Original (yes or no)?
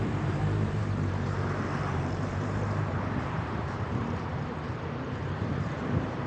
no